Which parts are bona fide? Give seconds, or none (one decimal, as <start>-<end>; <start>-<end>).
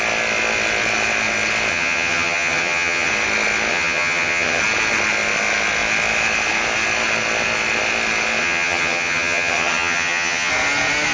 0.0-1.7; 3.1-3.7; 4.6-8.4; 10.5-11.1